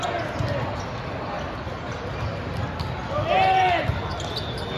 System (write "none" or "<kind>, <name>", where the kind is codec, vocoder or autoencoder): none